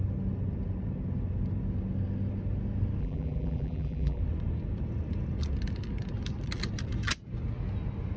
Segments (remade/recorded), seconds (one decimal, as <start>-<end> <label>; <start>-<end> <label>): 0.0-3.0 recorded; 3.0-4.2 remade; 4.2-8.2 recorded